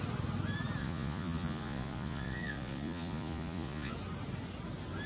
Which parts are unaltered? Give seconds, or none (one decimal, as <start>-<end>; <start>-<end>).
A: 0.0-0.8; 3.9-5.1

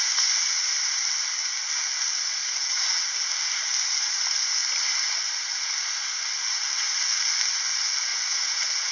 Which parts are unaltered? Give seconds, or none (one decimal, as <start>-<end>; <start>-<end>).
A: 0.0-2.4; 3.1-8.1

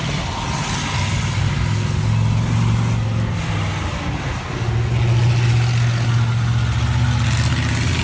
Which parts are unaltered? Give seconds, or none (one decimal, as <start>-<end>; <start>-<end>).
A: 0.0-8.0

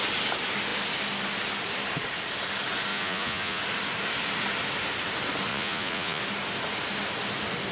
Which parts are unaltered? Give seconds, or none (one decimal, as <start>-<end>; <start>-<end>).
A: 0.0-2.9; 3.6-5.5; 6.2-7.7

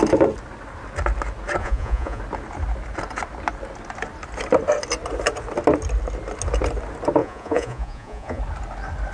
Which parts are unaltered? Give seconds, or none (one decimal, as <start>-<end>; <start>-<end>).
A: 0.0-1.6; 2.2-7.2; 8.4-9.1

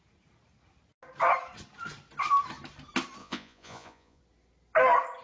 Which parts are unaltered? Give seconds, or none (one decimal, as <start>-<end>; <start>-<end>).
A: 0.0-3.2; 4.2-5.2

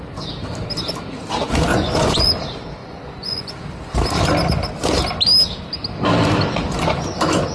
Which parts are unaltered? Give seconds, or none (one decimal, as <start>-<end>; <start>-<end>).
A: 0.0-1.7; 2.3-2.8; 3.5-7.5